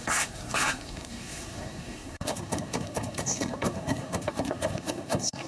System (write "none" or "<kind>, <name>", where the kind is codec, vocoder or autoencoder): codec, SNAC